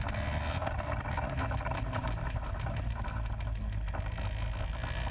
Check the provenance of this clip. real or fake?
real